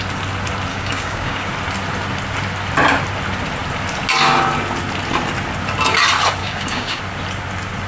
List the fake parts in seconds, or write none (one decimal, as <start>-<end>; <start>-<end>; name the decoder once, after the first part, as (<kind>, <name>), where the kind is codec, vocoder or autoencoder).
0.7-1.5 (codec, DAC); 6.4-7.0